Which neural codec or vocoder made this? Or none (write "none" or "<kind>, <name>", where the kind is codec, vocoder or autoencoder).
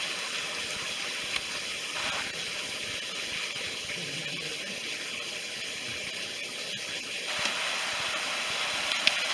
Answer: none